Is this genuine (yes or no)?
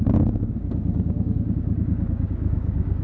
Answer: no